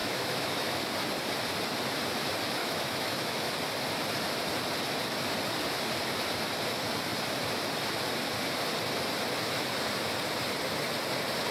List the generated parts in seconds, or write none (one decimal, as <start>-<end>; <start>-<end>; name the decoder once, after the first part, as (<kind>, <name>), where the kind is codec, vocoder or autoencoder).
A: 0.0-0.8 (autoencoder, DAC-VAE); 2.6-3.5